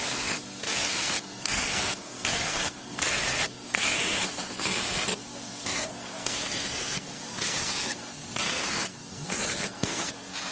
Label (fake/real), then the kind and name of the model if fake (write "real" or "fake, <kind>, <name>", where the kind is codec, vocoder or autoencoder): fake, codec, SNAC